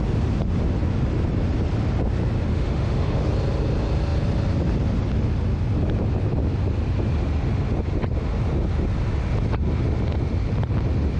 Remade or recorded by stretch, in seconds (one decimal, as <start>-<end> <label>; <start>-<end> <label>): 0.0-2.5 recorded; 2.5-3.3 remade; 3.3-11.2 recorded